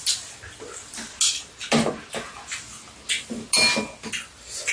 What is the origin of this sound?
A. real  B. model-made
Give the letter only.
A